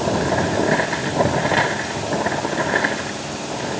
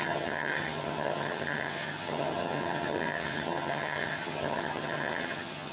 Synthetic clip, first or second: second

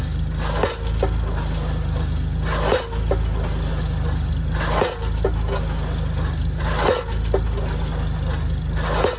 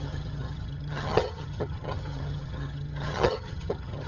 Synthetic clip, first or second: second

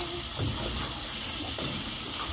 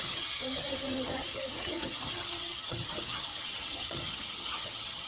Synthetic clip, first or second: second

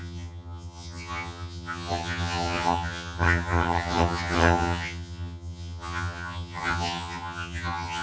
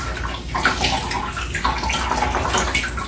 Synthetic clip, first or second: first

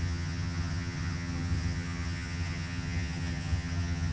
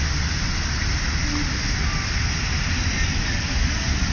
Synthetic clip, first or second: first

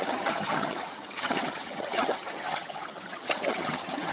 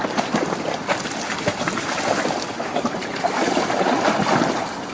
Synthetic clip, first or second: first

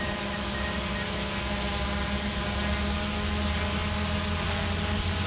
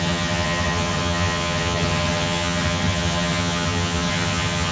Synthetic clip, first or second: second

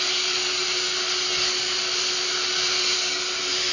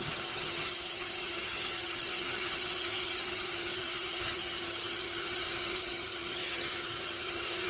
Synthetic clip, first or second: second